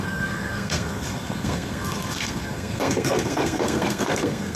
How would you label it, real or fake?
fake